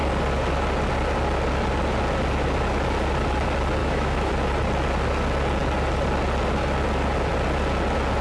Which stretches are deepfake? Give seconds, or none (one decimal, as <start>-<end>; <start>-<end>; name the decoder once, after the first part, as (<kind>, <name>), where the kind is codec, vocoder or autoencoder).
3.8-4.3 (autoencoder, DAC-VAE)

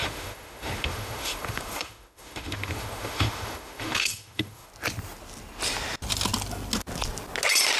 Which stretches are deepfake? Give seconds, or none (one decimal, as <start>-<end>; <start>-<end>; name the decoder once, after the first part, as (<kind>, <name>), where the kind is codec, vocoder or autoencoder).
0.0-4.7 (autoencoder, DAC-VAE)

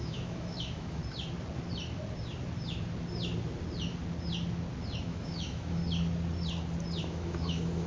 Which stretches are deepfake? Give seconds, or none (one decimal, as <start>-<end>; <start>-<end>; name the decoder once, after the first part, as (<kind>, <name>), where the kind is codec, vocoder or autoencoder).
0.0-1.0 (autoencoder, DAC-VAE); 5.0-5.8; 7.0-7.9

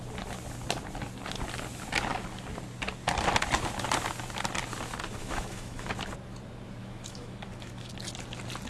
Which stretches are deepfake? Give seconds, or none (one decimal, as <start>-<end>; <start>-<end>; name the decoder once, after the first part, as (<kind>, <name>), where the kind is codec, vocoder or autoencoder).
5.2-5.9 (autoencoder, DAC-VAE); 6.8-7.9

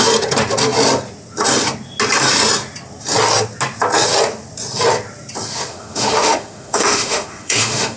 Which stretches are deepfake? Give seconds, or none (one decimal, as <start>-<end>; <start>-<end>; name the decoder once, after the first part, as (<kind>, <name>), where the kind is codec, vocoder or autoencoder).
5.7-8.0 (autoencoder, DAC-VAE)

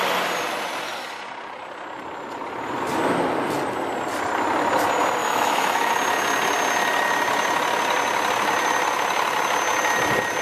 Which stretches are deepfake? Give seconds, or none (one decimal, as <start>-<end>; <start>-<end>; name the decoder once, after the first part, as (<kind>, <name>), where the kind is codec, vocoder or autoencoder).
5.2-5.9 (autoencoder, DAC-VAE)